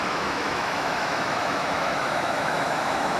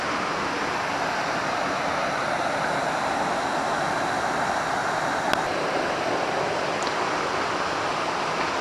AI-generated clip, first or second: first